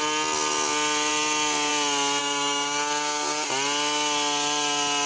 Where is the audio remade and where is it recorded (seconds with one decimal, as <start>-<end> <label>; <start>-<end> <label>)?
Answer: 0.0-2.2 recorded; 2.2-3.5 remade; 3.5-5.1 recorded